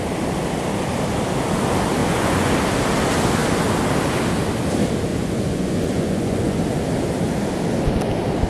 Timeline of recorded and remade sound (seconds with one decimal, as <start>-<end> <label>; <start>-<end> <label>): 0.0-2.0 recorded; 2.0-2.5 remade; 2.5-5.1 recorded; 5.1-6.6 remade; 6.6-8.5 recorded